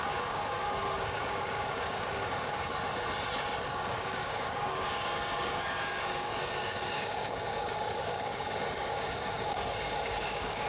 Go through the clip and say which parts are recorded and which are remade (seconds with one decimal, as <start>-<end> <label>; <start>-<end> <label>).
0.0-2.7 remade; 2.7-3.6 recorded; 3.6-10.7 remade